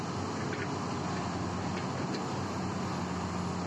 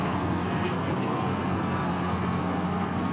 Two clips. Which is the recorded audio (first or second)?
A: first